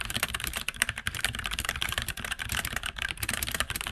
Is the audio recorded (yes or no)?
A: no